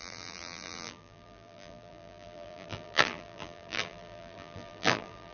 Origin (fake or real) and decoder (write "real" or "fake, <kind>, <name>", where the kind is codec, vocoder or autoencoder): fake, vocoder, BigVGAN v2